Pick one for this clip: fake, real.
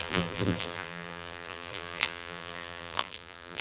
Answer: fake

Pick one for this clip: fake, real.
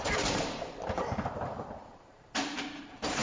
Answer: fake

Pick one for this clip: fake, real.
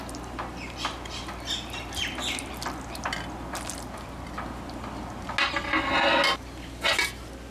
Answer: real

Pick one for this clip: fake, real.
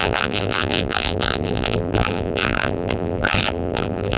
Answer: fake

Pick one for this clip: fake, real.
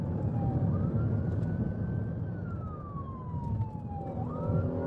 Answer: real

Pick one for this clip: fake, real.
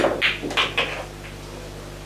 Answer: real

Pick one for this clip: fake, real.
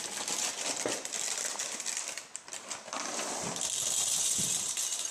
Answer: fake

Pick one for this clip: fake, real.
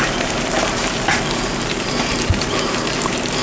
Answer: fake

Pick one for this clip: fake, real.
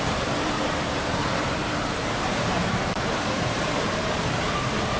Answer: fake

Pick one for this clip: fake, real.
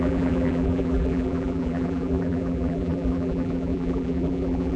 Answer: fake